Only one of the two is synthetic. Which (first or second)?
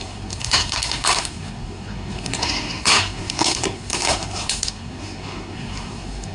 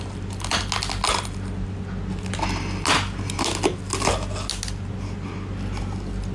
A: first